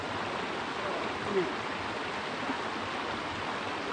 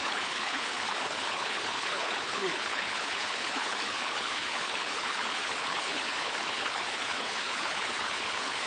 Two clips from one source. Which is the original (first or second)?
first